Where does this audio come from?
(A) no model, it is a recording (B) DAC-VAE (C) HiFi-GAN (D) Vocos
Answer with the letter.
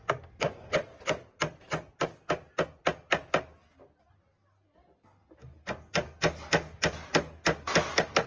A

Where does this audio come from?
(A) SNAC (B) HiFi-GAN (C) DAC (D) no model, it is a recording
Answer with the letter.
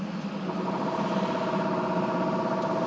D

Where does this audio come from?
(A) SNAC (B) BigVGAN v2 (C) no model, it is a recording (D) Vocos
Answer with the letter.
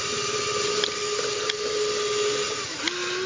C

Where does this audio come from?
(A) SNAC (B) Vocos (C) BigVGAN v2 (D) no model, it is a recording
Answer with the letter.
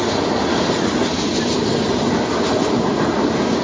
D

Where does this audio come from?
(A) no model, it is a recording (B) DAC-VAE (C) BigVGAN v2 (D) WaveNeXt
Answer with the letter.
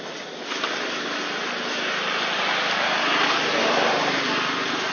A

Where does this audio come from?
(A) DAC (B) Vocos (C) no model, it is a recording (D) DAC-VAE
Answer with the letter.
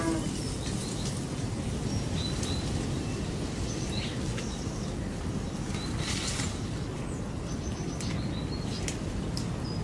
C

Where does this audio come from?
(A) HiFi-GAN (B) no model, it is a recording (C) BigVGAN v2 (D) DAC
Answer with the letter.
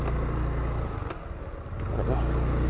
B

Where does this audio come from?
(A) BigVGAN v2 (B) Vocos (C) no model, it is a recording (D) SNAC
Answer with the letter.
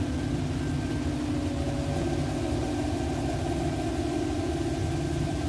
C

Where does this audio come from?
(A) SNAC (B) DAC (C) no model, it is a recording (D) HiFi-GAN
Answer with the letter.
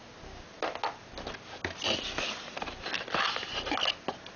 C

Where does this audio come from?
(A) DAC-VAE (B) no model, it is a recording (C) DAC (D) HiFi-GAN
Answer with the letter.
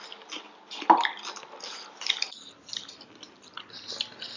B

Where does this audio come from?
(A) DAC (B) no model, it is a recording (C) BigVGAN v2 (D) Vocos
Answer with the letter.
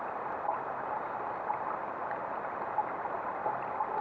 B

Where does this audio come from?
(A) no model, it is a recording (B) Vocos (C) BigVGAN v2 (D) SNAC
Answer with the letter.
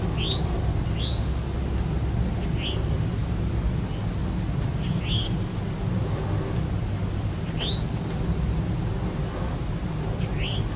A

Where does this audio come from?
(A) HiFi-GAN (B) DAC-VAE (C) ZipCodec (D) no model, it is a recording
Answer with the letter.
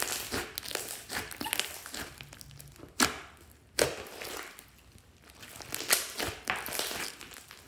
D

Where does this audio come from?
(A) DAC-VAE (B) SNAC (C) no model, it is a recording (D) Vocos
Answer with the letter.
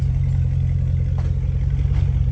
C